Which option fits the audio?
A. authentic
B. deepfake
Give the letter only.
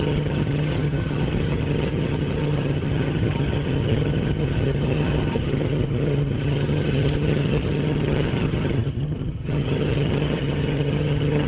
B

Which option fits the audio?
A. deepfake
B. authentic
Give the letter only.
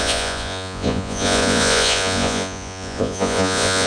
A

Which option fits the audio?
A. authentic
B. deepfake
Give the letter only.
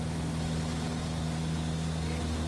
A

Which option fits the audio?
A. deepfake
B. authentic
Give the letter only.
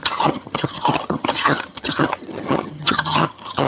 A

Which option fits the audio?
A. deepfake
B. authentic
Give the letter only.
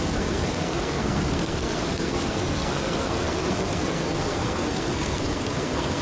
A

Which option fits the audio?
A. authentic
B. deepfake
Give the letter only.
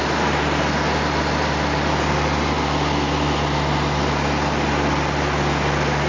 A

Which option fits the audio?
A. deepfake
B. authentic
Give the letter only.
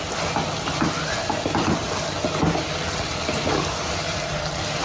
B